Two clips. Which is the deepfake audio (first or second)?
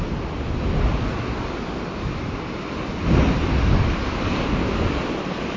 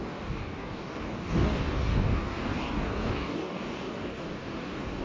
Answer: second